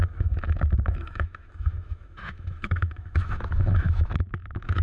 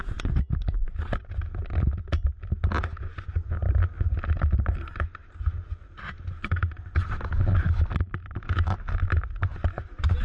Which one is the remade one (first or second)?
first